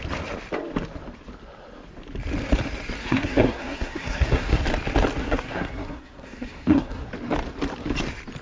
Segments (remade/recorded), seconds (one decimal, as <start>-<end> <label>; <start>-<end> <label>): 0.0-3.0 recorded; 3.0-4.6 remade; 4.6-5.2 recorded; 5.2-7.1 remade; 7.1-8.4 recorded